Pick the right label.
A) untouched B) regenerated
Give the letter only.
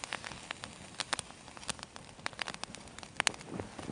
A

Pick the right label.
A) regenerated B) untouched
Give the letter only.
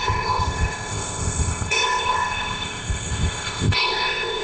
A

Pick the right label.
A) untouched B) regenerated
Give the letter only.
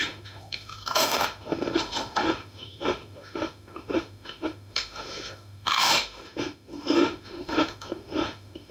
B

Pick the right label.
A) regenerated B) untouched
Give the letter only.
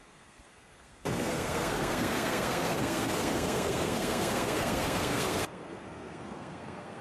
A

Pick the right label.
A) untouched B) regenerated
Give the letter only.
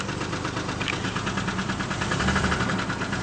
B